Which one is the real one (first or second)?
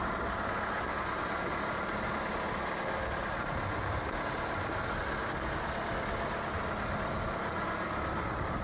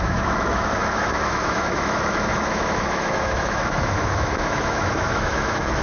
first